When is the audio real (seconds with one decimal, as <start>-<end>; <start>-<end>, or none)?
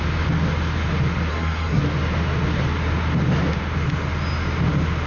0.0-1.3; 1.8-5.1